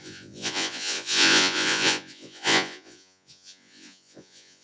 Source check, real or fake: fake